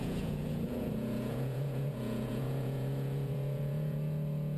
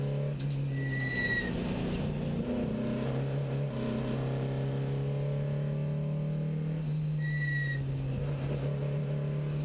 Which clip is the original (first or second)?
second